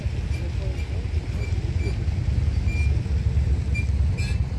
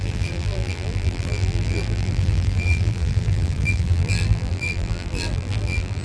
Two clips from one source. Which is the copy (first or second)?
second